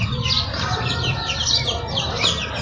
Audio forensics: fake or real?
real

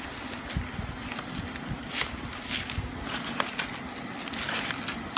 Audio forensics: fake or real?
real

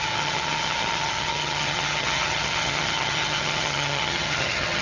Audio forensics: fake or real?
fake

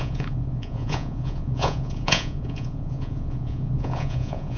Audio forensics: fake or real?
fake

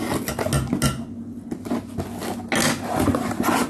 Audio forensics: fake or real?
real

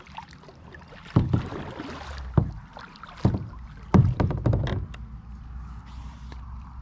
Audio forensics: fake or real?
real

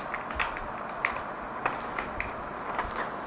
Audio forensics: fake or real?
real